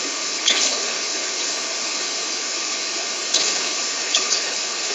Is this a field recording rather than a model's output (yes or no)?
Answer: no